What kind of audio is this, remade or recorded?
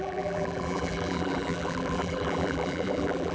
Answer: remade